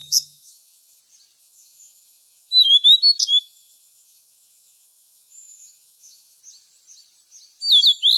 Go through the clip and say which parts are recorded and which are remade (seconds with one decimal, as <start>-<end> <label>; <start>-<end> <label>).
0.0-1.0 remade; 1.0-1.4 recorded; 1.4-2.7 remade; 2.7-3.3 recorded; 3.3-6.4 remade; 6.4-8.2 recorded